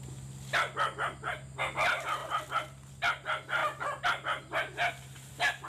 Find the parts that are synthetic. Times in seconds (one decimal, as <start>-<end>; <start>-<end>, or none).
none